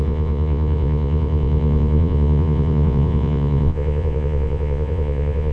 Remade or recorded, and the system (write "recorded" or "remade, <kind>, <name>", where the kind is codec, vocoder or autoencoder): remade, vocoder, Vocos